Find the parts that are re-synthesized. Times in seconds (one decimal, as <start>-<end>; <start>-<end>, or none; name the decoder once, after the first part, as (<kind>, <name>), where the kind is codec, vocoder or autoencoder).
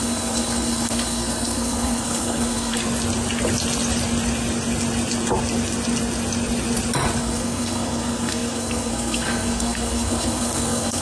0.0-2.8 (codec, SNAC); 7.2-11.0